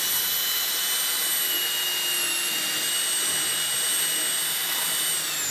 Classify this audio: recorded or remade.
recorded